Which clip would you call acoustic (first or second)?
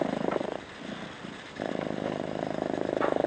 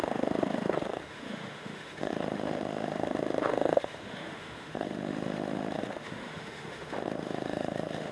first